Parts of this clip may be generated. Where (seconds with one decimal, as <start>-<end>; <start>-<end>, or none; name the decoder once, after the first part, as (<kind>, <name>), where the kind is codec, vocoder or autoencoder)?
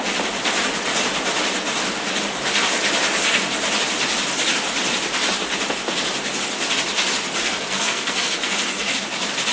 7.4-9.0 (codec, SNAC)